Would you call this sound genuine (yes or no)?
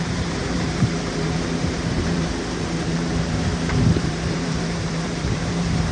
no